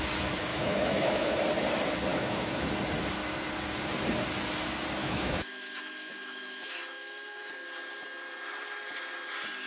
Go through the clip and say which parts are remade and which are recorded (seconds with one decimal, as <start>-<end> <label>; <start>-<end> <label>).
0.0-0.5 recorded; 0.5-1.4 remade; 1.4-2.1 recorded; 2.1-2.7 remade; 2.7-5.0 recorded; 5.0-7.5 remade; 7.5-9.7 recorded